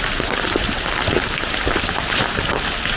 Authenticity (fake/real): real